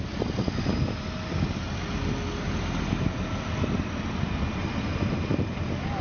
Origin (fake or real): real